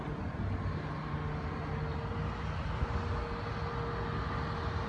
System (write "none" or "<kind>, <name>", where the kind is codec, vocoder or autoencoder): none